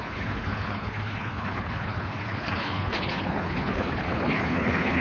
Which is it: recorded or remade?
remade